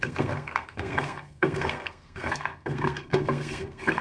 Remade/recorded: remade